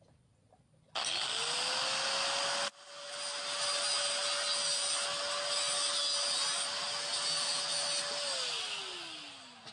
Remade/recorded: recorded